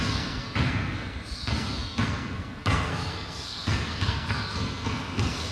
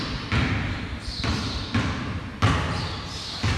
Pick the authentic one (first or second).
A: second